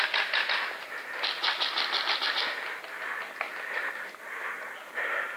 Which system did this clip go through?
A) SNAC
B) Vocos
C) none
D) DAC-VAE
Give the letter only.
C